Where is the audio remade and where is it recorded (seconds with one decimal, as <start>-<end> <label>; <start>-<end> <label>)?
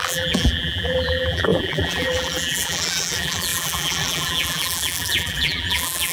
0.0-6.1 remade